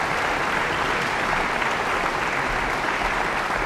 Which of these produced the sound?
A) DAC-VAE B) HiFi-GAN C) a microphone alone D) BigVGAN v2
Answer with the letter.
C